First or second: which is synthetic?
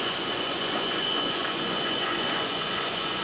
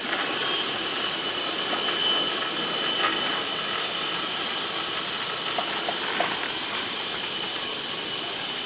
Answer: first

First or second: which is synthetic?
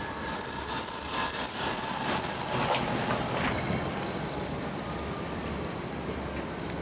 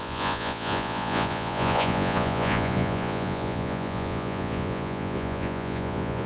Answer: second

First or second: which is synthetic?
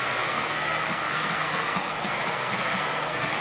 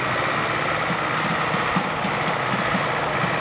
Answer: first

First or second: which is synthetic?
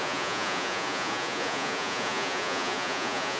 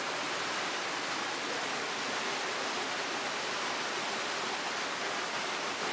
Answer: first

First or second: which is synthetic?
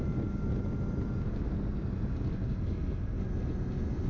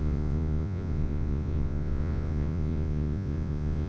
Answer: second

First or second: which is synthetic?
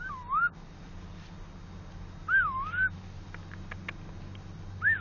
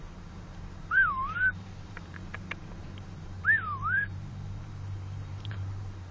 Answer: second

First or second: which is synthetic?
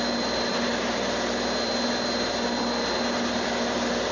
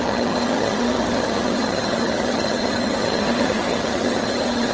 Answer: second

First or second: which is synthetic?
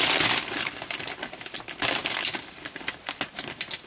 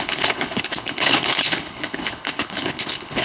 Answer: second